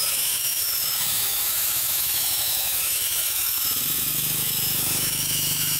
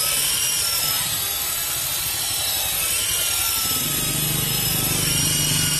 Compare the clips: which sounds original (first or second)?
second